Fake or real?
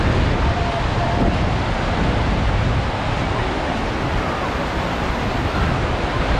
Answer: real